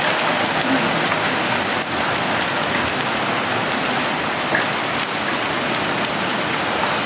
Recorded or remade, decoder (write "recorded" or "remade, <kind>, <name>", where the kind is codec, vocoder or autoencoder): recorded